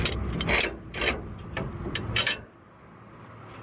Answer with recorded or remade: recorded